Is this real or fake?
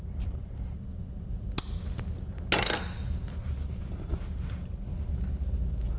real